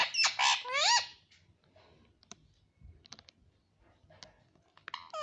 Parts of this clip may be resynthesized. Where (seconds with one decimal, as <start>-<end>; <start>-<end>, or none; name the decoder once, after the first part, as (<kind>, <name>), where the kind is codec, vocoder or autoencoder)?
none

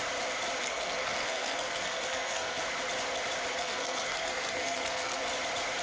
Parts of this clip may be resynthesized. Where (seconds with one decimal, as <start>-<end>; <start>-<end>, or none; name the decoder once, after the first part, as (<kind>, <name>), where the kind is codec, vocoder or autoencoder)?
0.6-2.6 (codec, SNAC); 3.6-5.2

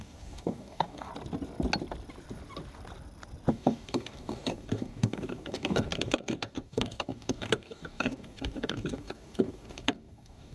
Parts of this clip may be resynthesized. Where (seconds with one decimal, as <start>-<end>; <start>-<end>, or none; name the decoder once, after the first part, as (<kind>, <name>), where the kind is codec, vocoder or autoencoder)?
0.0-1.1 (codec, DAC); 3.5-10.5

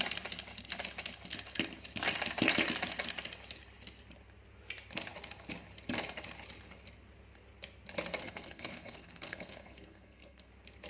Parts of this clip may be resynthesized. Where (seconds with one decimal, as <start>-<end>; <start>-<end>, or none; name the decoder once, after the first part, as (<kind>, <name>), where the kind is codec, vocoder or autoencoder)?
8.2-10.5 (codec, SNAC)

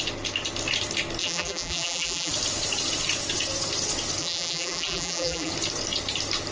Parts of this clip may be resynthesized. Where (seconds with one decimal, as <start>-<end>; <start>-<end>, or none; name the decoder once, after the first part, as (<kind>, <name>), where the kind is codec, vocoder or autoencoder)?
1.2-2.3 (vocoder, BigVGAN v2); 4.2-5.5